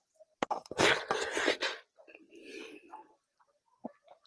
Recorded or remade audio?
recorded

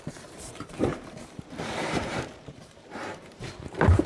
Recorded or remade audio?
remade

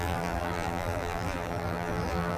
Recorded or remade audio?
remade